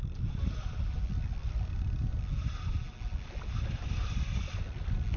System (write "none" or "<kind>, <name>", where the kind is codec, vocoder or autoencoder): none